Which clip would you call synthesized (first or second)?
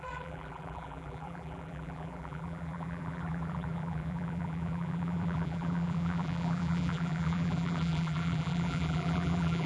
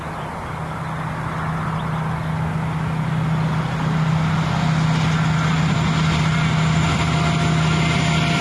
first